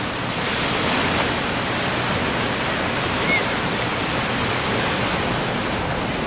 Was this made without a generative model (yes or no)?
yes